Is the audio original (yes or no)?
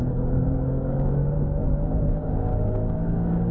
no